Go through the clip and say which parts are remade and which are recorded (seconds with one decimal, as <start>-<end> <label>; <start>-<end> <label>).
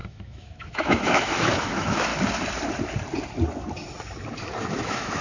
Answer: 0.0-2.1 remade; 2.1-4.7 recorded; 4.7-5.2 remade